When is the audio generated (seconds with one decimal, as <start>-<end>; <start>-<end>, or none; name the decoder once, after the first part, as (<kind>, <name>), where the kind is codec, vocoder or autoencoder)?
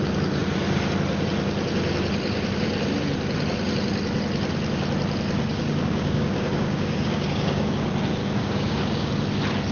5.5-7.7 (codec, DAC); 8.2-9.1